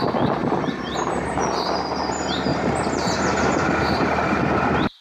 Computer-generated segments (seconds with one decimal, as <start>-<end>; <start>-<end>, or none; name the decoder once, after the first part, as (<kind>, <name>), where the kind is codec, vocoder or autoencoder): 0.4-1.4 (vocoder, BigVGAN v2); 2.5-4.4